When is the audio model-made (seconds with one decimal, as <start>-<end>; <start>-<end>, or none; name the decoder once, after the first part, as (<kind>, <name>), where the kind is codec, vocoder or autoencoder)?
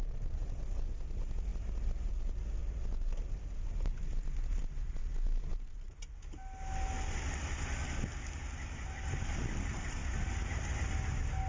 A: none